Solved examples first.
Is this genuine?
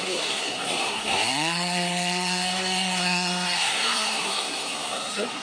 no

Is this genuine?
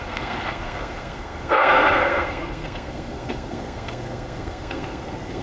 no